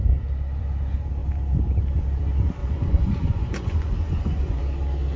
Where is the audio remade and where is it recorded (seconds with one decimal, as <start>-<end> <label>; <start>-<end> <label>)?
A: 0.0-2.6 recorded; 2.6-4.6 remade; 4.6-5.2 recorded